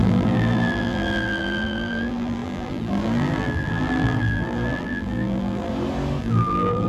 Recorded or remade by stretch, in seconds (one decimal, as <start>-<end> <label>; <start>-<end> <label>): 0.0-5.7 remade; 5.7-6.2 recorded; 6.2-6.9 remade